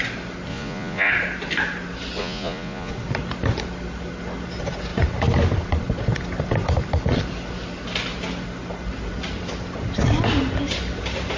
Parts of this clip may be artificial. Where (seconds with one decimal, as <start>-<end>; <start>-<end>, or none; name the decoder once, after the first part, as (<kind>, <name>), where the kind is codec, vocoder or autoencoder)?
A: 0.5-1.1 (vocoder, Vocos); 2.2-2.9